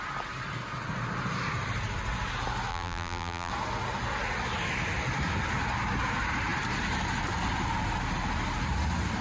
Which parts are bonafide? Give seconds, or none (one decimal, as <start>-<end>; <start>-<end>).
0.0-2.7; 3.5-9.2